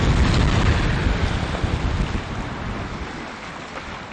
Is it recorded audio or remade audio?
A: recorded